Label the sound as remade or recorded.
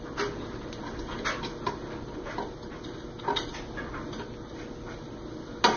recorded